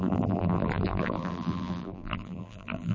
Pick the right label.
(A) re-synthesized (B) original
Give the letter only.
A